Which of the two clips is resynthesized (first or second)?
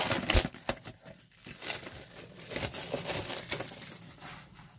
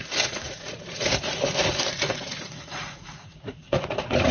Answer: second